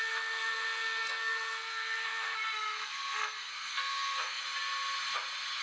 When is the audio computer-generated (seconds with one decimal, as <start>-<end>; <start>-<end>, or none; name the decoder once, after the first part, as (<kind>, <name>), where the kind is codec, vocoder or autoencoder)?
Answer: 0.0-4.4 (codec, SNAC)